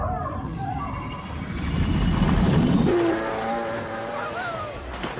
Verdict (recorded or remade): recorded